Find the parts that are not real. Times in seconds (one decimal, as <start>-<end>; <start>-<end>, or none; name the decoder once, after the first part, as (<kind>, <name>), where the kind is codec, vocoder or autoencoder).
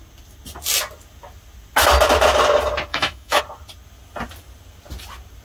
2.9-3.4 (autoencoder, DAC-VAE)